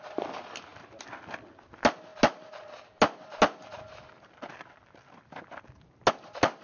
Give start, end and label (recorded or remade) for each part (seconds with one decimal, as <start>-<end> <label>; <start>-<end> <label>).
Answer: 0.0-6.6 recorded